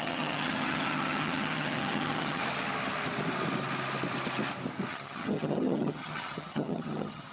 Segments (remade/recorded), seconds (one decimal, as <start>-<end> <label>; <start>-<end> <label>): 0.0-2.4 remade; 2.4-4.9 recorded; 4.9-7.3 remade